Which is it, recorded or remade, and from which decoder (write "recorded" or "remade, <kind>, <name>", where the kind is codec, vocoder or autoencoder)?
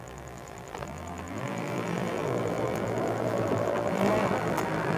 remade, vocoder, BigVGAN v2